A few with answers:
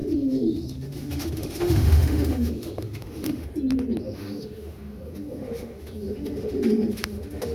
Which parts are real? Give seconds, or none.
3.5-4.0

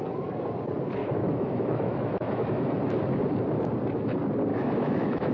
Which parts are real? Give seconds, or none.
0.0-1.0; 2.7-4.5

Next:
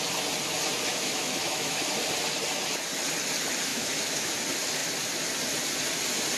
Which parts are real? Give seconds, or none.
0.0-0.9; 1.8-3.7; 4.3-6.4

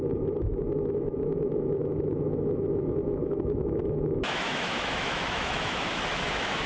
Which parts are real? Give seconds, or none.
none

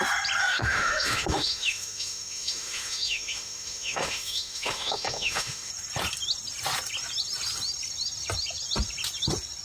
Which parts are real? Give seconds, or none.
0.0-0.4; 5.7-9.6

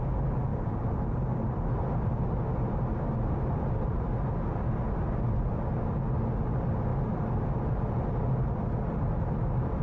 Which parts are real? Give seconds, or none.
0.0-9.8

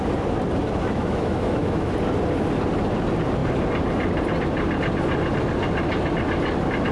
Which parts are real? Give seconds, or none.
0.0-0.8; 1.9-6.9